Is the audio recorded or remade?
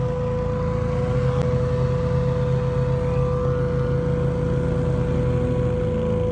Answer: recorded